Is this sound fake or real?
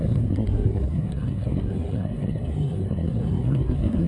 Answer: fake